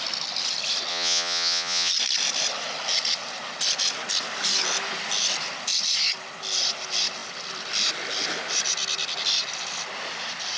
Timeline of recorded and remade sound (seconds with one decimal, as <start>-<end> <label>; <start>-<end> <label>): 0.0-0.9 recorded; 0.9-1.9 remade; 1.9-10.6 recorded